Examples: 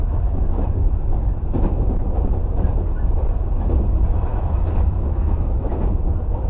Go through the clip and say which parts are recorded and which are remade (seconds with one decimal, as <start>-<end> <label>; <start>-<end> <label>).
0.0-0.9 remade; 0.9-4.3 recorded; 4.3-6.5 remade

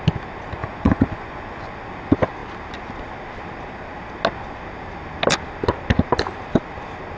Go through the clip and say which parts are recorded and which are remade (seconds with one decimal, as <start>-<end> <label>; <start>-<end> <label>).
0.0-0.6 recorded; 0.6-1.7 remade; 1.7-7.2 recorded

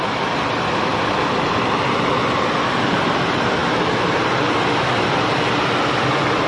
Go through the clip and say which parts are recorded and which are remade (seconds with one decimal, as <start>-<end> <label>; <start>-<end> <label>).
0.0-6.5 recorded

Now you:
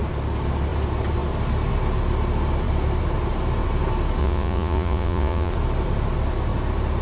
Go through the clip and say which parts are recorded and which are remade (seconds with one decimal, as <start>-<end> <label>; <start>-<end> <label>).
0.0-4.2 recorded; 4.2-5.5 remade; 5.5-7.0 recorded

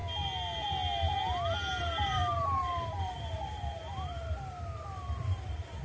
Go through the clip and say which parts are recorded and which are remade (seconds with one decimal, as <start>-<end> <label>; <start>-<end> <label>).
0.0-1.8 recorded; 1.8-5.8 remade

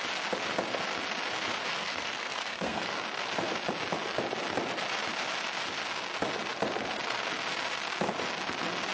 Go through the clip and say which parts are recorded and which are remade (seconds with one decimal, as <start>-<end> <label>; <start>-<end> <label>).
0.0-1.7 recorded; 1.7-2.9 remade; 2.9-8.9 recorded